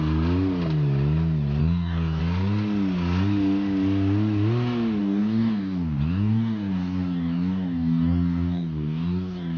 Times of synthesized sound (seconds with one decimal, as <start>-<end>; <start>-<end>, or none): 1.6-2.2; 5.0-9.6